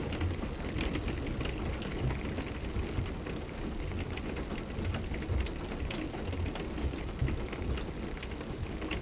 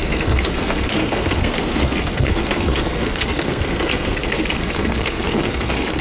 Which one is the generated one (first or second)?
second